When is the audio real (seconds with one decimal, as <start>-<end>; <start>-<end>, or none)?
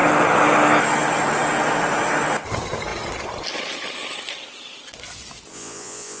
0.0-5.5